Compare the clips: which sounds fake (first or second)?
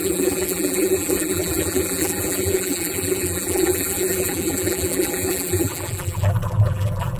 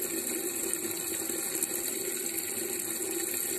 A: first